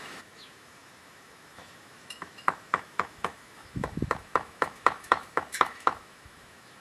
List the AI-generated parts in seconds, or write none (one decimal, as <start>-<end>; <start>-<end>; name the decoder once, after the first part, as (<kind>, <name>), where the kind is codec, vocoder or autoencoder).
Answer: 0.0-6.8 (autoencoder, DAC-VAE)